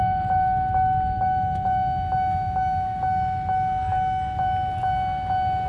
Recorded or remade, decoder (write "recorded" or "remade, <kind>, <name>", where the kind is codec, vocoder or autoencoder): recorded